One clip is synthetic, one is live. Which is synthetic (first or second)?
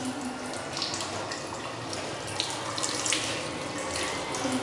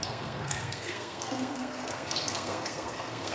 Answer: second